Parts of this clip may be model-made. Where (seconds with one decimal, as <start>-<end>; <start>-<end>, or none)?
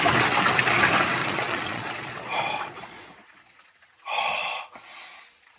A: 1.2-4.6